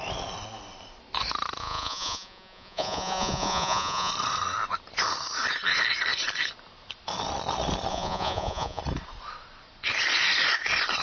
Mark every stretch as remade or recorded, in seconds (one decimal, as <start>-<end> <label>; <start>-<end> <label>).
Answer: 0.0-1.6 recorded; 1.6-4.1 remade; 4.1-7.9 recorded; 7.9-8.8 remade; 8.8-11.0 recorded